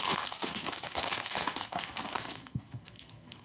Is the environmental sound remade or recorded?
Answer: remade